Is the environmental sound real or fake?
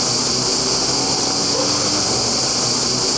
real